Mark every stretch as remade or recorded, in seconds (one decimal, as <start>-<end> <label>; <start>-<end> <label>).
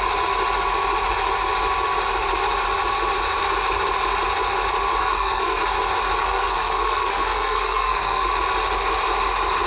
0.0-5.0 recorded; 5.0-5.6 remade; 5.6-6.2 recorded; 6.2-8.3 remade; 8.3-9.7 recorded